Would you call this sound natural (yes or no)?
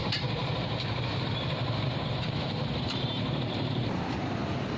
no